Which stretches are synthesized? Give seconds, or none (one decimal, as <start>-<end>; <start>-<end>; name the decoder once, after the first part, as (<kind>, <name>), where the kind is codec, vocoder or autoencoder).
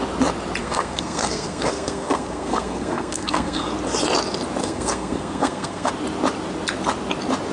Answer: 0.6-3.7 (codec, SNAC); 4.6-5.9